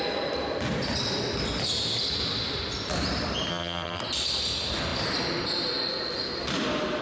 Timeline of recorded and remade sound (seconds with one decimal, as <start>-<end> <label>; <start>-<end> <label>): 0.0-3.5 recorded; 3.5-4.0 remade; 4.0-7.0 recorded